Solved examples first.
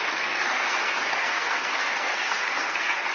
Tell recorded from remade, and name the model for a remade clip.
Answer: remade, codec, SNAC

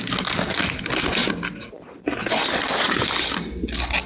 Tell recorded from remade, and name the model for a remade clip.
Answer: recorded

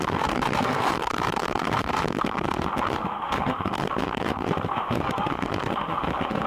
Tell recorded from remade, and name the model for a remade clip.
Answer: remade, autoencoder, DAC-VAE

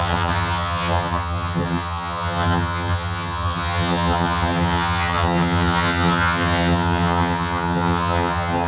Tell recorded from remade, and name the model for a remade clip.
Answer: remade, vocoder, HiFi-GAN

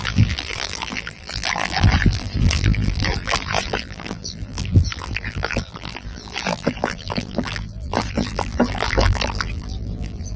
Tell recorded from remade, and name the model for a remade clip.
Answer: remade, vocoder, BigVGAN v2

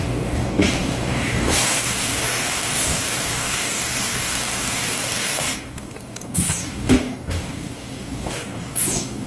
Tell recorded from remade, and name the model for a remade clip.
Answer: remade, codec, DAC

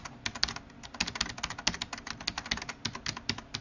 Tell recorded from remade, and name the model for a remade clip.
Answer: recorded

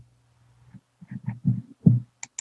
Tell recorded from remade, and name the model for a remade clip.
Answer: recorded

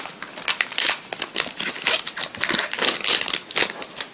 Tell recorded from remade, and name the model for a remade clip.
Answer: recorded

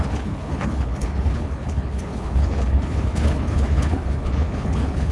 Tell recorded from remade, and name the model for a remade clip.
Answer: remade, codec, HILCodec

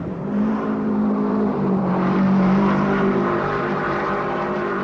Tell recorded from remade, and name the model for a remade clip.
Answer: remade, vocoder, BigVGAN v2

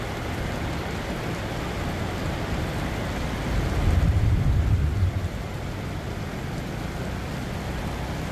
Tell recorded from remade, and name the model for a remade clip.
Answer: recorded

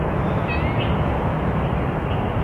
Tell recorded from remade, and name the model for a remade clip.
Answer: recorded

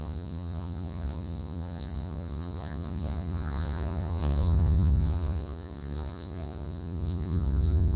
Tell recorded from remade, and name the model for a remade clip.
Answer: remade, vocoder, Vocos